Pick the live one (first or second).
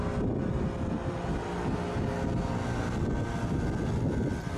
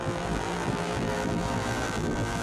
first